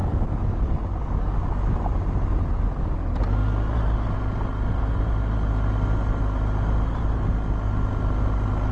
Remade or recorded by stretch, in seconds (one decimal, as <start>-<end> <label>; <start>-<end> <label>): 0.0-8.7 recorded